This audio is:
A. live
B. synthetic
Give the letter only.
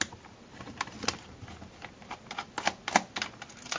A